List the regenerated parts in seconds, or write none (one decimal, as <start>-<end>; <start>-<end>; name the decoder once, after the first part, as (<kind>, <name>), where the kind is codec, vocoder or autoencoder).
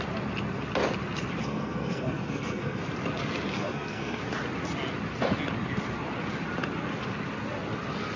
1.4-2.8 (codec, SNAC); 3.5-4.2